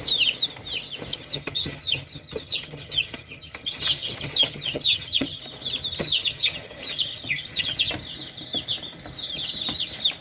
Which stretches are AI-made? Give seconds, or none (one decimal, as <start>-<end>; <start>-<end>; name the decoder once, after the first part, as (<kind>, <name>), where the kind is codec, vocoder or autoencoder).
1.1-5.4 (vocoder, HiFi-GAN); 6.0-7.9